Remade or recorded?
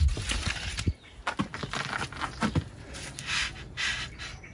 recorded